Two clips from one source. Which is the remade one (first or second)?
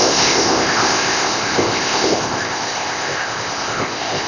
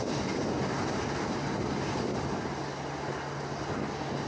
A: first